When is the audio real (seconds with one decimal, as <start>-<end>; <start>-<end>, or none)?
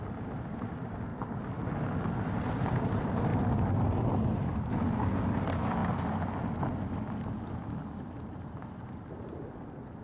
1.1-2.3; 3.3-4.0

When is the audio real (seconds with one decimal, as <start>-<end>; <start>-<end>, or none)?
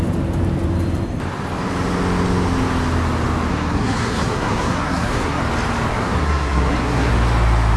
0.0-3.5; 5.4-5.9; 7.1-7.8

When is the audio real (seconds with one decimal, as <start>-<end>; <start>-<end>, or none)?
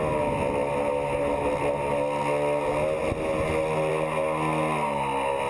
0.0-5.5